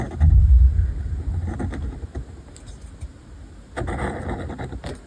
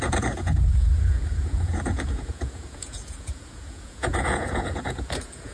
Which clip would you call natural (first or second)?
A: first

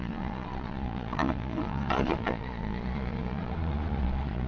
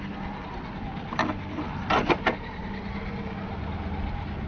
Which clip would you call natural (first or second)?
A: second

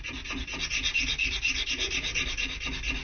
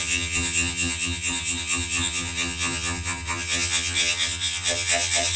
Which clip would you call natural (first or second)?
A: first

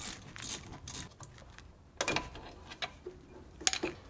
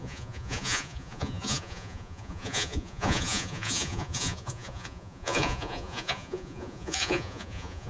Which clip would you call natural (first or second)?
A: first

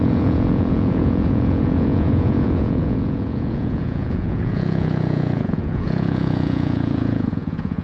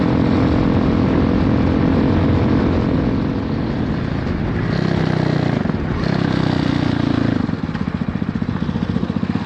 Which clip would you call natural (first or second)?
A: second